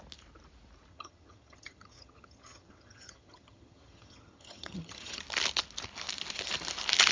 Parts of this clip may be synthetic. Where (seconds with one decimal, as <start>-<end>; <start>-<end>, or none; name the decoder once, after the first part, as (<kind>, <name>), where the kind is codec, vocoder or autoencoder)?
0.9-5.2 (vocoder, HiFi-GAN)